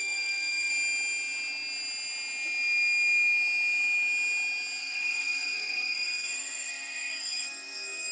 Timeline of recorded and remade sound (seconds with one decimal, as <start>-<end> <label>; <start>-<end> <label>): 0.0-0.7 remade; 0.7-4.8 recorded; 4.8-8.1 remade

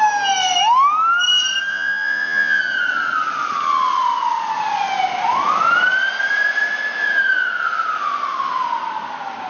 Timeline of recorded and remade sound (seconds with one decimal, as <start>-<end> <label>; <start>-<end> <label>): 0.0-1.7 recorded; 1.7-2.6 remade; 2.6-9.5 recorded

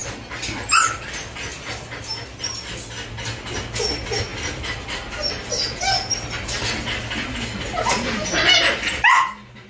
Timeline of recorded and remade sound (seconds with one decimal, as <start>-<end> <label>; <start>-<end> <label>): 0.0-1.1 remade; 1.1-4.3 recorded; 4.3-5.3 remade; 5.3-9.7 recorded

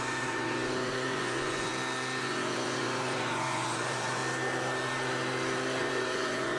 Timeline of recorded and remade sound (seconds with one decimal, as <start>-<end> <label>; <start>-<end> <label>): 0.0-1.7 remade; 1.7-2.2 recorded; 2.2-4.2 remade; 4.2-5.8 recorded; 5.8-6.6 remade

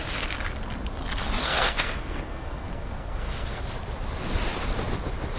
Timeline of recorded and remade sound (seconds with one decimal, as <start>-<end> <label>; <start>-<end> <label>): 0.0-1.4 recorded; 1.4-3.6 remade; 3.6-5.4 recorded

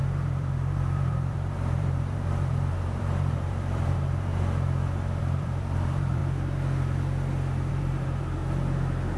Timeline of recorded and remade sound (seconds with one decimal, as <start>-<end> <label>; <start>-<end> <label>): 0.0-4.3 remade; 4.3-5.2 recorded; 5.2-6.2 remade; 6.2-7.7 recorded; 7.7-8.4 remade; 8.4-9.2 recorded